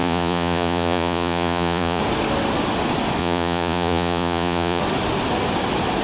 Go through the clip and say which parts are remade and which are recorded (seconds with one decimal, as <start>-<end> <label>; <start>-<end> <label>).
0.0-2.0 remade; 2.0-3.2 recorded; 3.2-4.8 remade; 4.8-6.0 recorded